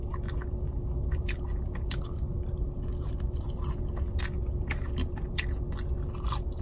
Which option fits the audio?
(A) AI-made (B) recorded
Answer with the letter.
B